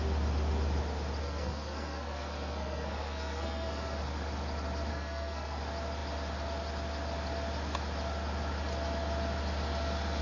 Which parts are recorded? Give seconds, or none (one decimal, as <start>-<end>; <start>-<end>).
0.0-1.2; 4.0-4.9; 5.6-10.2